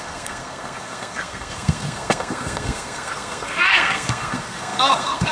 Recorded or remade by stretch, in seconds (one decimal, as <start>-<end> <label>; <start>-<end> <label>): 0.0-5.3 remade